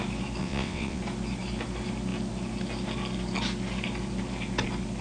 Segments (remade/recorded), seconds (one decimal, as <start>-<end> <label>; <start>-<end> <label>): 0.0-0.4 recorded; 0.4-1.0 remade; 1.0-5.0 recorded